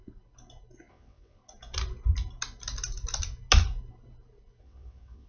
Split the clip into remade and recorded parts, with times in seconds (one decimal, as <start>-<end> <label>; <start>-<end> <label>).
0.0-0.9 recorded; 0.9-1.4 remade; 1.4-4.6 recorded; 4.6-5.3 remade